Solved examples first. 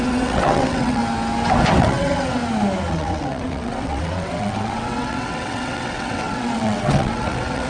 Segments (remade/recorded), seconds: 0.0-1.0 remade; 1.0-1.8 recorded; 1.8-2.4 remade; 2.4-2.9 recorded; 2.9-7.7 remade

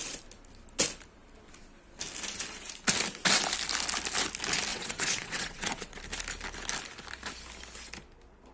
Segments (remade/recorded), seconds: 0.0-4.7 recorded; 4.7-6.0 remade; 6.0-8.5 recorded

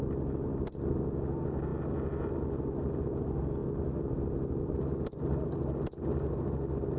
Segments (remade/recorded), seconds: 0.0-7.0 recorded

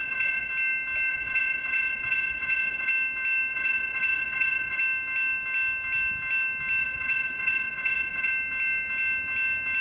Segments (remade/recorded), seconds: 0.0-0.5 remade; 0.5-1.1 recorded; 1.1-2.9 remade; 2.9-3.5 recorded; 3.5-4.8 remade; 4.8-6.8 recorded; 6.8-8.3 remade; 8.3-9.8 recorded

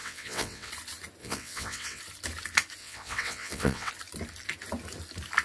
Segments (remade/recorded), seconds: 0.0-0.7 remade; 0.7-1.2 recorded; 1.2-2.0 remade; 2.0-2.8 recorded; 2.8-3.9 remade; 3.9-5.4 recorded